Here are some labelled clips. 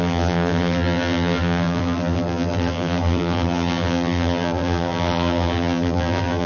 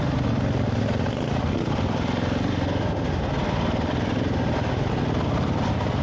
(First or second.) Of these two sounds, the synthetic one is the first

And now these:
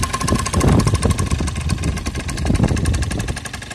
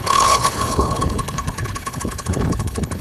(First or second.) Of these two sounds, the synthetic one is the second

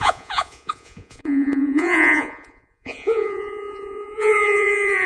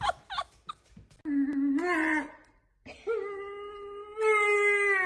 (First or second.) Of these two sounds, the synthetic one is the first